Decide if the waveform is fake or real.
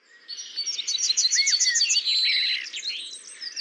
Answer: real